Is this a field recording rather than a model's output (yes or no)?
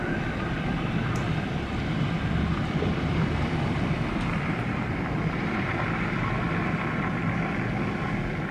no